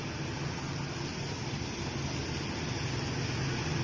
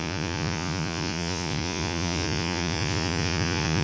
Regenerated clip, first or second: second